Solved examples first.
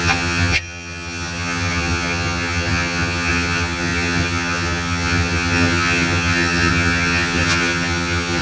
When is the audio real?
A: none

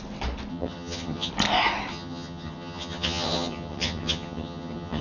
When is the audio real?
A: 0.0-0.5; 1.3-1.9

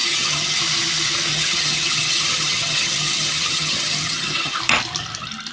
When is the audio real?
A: 0.6-1.3; 4.6-5.5

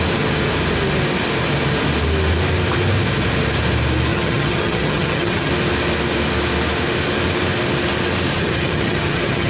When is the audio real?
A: 0.0-4.1; 5.5-8.3